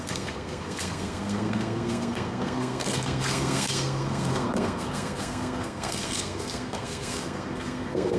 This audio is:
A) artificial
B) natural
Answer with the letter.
A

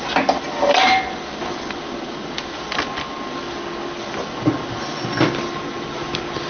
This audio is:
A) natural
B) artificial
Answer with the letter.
A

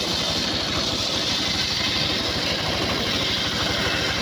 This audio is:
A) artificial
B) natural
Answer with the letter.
B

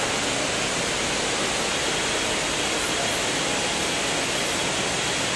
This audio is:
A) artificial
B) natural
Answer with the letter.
B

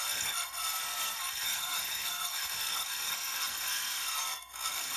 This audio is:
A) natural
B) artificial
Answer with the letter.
B